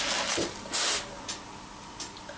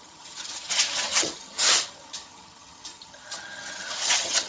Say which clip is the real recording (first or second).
first